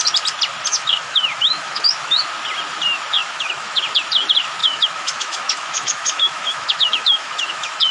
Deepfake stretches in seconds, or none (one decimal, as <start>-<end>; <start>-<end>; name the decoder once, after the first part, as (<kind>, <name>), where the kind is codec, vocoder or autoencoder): 0.7-2.2 (autoencoder, DAC-VAE); 3.2-3.8; 4.6-7.9